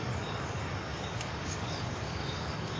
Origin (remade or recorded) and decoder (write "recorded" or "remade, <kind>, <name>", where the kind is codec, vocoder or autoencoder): remade, codec, DAC